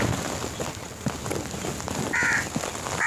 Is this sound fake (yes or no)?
no